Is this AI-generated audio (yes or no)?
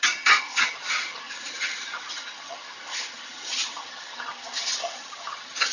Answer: yes